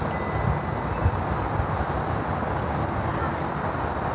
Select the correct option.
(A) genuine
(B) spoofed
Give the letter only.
A